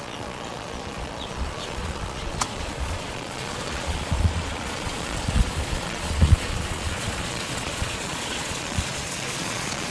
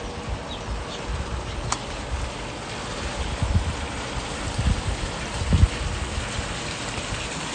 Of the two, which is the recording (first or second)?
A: second